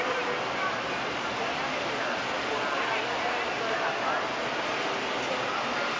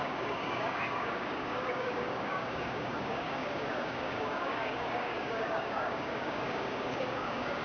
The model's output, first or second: second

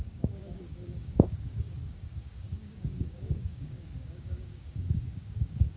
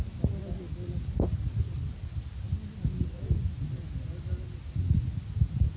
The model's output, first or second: first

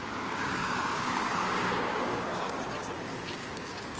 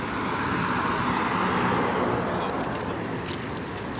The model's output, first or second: first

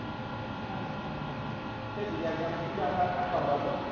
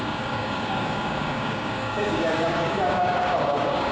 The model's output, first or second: second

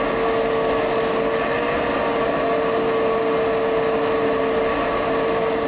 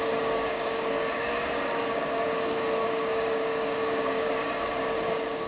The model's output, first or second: second